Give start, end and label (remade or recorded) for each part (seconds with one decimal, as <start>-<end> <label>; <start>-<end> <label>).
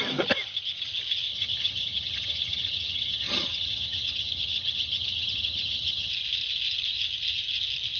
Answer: 0.0-1.3 recorded; 1.3-6.1 remade; 6.1-8.0 recorded